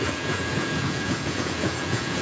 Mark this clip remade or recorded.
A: remade